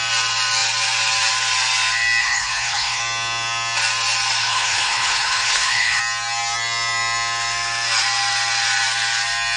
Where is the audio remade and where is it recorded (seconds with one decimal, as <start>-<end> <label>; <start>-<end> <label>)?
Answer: 0.0-2.2 recorded; 2.2-3.0 remade; 3.0-4.4 recorded; 4.4-6.0 remade; 6.0-9.6 recorded